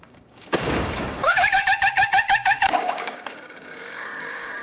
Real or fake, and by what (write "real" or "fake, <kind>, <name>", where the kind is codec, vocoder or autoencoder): fake, codec, DAC